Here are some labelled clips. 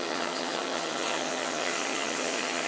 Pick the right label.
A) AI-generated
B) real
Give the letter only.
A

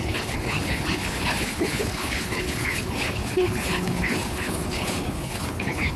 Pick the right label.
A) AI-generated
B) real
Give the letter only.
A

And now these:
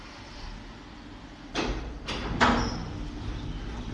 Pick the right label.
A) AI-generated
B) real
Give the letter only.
B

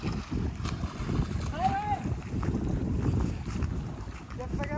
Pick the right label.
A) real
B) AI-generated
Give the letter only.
A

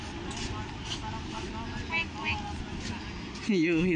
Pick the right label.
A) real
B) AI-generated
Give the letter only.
A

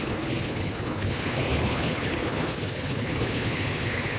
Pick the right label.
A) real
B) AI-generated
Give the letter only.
B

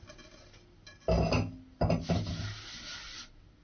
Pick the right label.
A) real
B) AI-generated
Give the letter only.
A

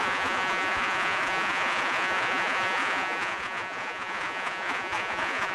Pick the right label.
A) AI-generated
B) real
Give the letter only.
A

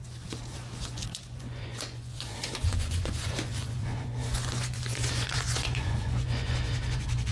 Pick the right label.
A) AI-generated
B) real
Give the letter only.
A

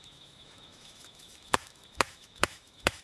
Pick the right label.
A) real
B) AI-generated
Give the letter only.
B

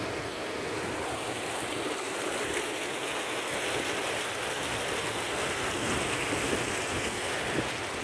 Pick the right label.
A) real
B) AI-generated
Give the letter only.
A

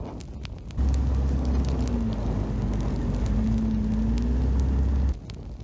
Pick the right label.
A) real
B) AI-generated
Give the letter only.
A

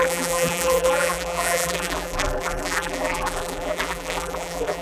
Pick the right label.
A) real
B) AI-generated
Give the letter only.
B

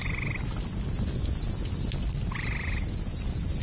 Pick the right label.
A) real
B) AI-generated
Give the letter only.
A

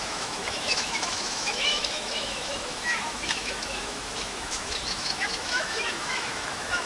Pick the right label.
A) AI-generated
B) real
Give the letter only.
A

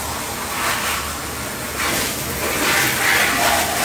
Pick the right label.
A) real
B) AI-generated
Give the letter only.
A